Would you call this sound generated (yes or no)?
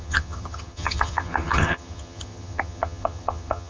yes